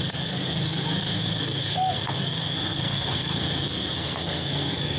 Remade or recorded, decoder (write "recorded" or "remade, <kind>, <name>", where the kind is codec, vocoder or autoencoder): remade, codec, SNAC